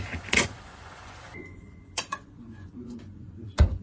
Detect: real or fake fake